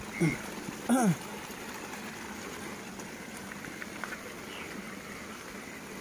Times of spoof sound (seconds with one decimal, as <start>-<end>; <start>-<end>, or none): none